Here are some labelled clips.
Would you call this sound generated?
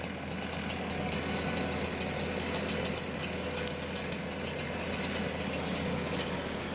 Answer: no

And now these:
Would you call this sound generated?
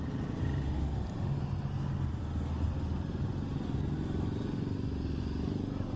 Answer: no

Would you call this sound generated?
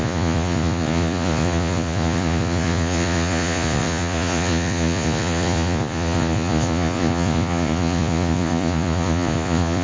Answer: yes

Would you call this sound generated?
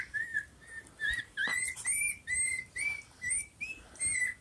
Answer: no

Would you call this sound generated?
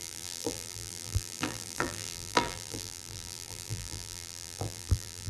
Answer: yes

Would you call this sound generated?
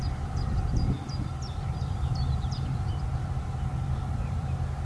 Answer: yes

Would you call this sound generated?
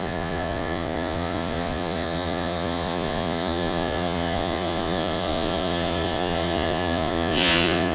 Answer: yes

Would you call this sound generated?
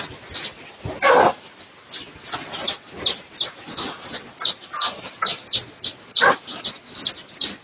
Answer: no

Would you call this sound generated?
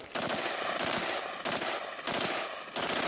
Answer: no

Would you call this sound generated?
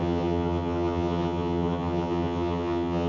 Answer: yes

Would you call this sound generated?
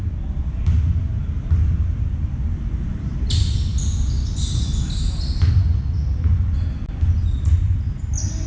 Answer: no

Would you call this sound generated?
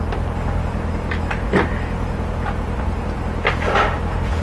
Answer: no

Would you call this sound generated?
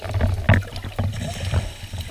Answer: no